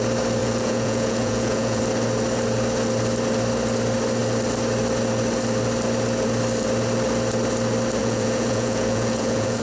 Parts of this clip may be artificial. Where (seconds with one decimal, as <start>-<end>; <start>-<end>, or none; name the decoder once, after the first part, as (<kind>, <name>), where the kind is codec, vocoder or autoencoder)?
0.4-1.8 (vocoder, Vocos); 8.0-9.6